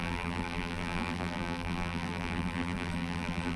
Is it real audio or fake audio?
fake